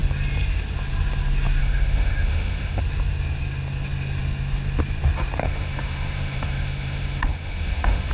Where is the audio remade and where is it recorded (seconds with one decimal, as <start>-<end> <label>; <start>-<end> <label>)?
0.0-1.6 recorded; 1.6-2.8 remade; 2.8-5.4 recorded; 5.4-8.1 remade